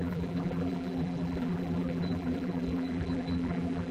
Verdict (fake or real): fake